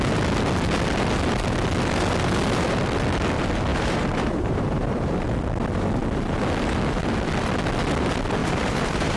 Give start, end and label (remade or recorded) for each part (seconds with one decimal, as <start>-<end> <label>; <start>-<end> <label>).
0.0-3.7 recorded; 3.7-5.2 remade; 5.2-8.4 recorded; 8.4-9.2 remade